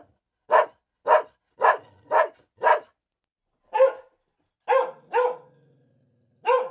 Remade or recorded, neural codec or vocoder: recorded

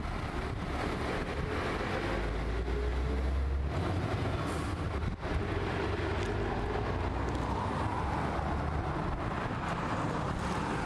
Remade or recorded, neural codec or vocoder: recorded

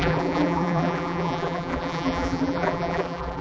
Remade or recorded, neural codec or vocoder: remade, vocoder, BigVGAN v2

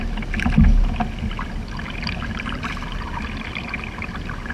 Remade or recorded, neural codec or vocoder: recorded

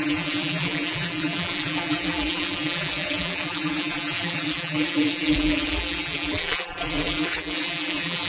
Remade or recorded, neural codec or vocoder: remade, vocoder, BigVGAN v2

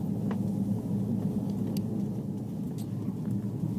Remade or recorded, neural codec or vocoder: recorded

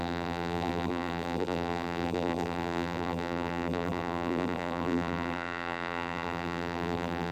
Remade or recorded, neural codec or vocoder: remade, vocoder, BigVGAN v2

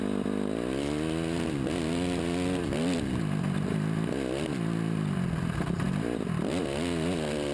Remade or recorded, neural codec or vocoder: recorded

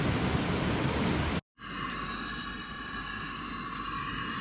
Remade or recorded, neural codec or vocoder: recorded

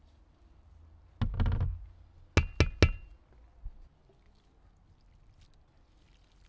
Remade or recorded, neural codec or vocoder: recorded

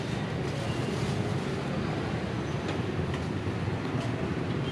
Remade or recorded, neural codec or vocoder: remade, vocoder, BigVGAN v2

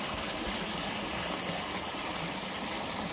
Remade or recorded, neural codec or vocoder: recorded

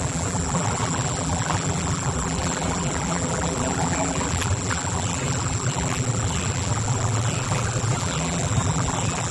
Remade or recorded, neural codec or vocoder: remade, vocoder, BigVGAN v2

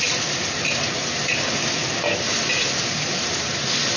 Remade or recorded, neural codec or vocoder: recorded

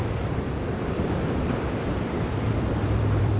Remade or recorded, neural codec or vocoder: remade, vocoder, BigVGAN v2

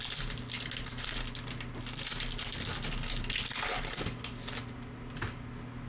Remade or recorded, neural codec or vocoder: recorded